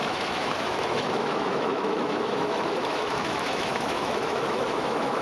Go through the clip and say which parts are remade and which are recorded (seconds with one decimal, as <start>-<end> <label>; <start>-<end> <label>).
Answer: 0.0-5.2 remade